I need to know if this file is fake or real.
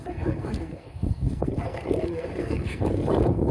fake